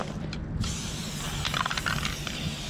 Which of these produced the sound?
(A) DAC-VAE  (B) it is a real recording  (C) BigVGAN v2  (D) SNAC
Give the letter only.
B